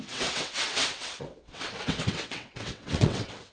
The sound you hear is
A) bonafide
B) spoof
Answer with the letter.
B